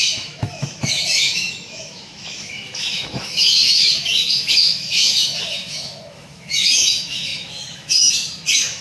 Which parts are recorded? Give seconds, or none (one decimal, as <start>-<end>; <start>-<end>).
none